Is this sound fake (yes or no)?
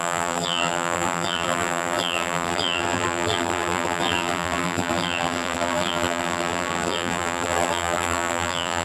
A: yes